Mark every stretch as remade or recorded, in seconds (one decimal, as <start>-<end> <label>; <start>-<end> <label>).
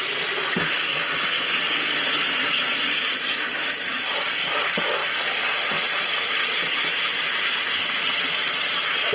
0.0-9.1 recorded